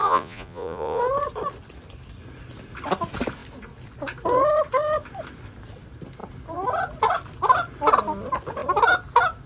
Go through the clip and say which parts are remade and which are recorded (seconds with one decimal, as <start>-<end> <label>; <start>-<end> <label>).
0.0-1.0 remade; 1.0-9.5 recorded